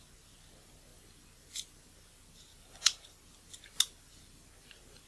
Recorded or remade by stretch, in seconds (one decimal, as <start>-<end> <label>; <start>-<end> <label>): 0.0-5.1 recorded